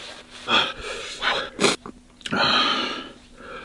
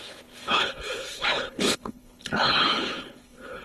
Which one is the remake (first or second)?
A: second